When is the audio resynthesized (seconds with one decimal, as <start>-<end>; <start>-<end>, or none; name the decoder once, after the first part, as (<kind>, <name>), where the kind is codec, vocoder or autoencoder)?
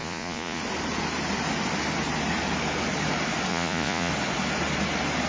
0.0-0.6 (vocoder, Vocos); 3.5-4.1